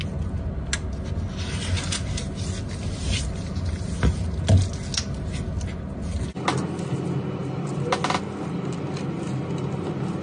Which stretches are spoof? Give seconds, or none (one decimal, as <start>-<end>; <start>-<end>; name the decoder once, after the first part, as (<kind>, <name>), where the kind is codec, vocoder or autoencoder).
none